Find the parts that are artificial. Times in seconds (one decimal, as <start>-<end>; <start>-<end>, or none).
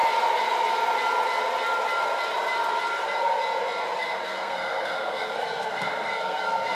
4.0-6.7